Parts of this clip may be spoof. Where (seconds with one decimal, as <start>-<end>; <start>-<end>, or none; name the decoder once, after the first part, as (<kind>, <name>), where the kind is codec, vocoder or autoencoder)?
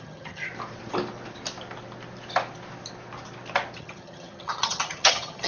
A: 0.0-0.5 (vocoder, HiFi-GAN); 3.8-5.5